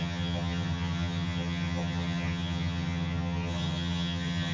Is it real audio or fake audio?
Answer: fake